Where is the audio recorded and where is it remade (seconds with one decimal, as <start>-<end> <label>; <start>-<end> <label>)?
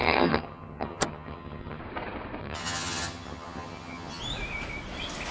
0.0-1.8 remade; 1.8-2.4 recorded; 2.4-4.2 remade; 4.2-5.3 recorded